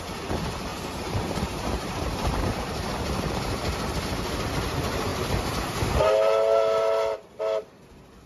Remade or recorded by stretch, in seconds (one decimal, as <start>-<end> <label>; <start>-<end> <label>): 0.0-0.7 recorded; 0.7-2.4 remade; 2.4-8.3 recorded